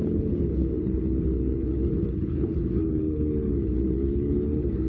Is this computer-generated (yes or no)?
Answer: yes